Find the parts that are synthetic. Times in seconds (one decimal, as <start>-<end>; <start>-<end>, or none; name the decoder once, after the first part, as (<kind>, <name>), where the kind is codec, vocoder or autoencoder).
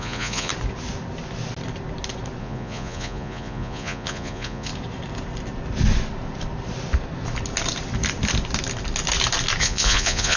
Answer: 0.0-0.5 (vocoder, Vocos); 2.4-4.7; 9.6-10.4